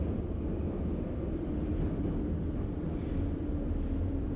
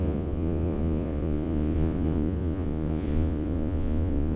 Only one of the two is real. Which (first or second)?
first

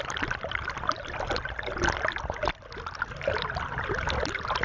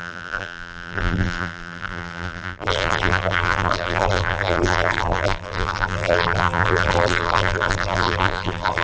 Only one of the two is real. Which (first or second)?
first